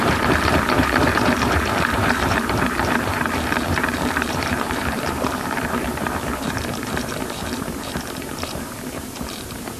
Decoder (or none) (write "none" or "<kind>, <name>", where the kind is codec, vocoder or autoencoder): vocoder, BigVGAN v2